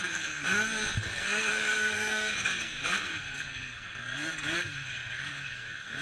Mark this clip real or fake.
fake